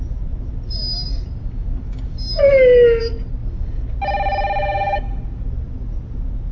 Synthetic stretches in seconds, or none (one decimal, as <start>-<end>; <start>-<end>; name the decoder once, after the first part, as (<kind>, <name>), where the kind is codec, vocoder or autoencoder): 4.6-5.2 (codec, DAC)